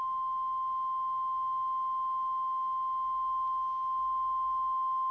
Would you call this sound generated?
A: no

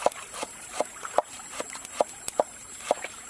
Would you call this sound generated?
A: yes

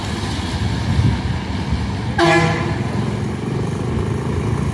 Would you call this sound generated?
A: no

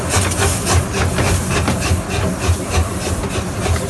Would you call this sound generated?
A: no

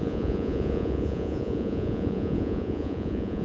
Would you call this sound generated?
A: yes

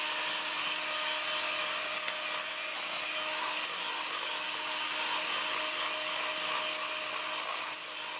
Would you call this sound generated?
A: no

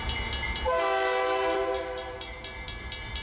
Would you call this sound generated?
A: no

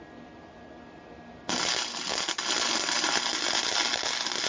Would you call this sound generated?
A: no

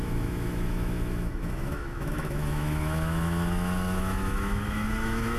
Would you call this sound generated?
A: yes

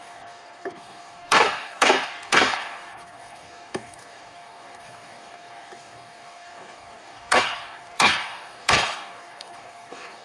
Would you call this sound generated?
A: yes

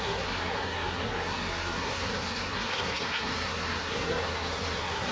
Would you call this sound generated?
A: yes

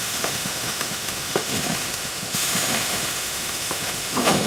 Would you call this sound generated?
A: yes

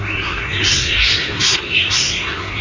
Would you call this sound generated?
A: yes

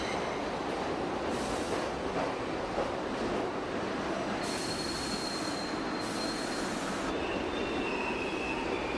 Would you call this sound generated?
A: no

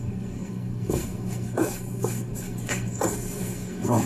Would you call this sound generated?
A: yes